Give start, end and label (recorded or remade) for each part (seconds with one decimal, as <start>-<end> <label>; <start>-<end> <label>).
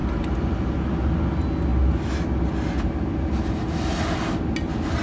0.0-5.0 recorded